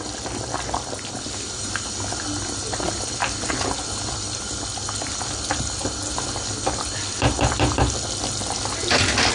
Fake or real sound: real